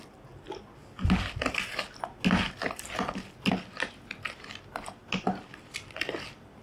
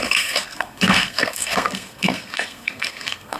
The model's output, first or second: second